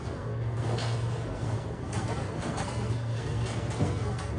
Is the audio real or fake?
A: fake